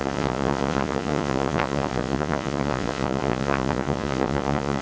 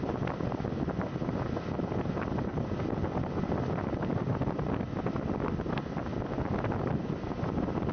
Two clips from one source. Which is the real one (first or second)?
second